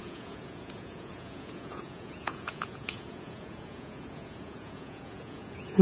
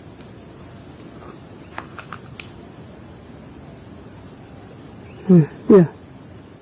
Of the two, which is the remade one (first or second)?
first